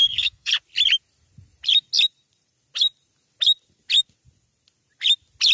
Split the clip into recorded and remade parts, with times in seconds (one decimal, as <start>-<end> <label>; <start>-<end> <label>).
0.0-0.5 remade; 0.5-5.5 recorded